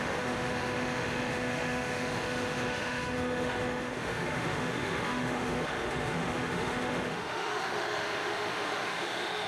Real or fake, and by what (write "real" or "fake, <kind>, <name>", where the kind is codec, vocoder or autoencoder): fake, autoencoder, DAC-VAE